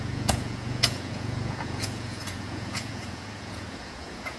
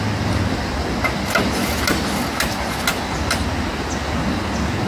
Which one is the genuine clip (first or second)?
second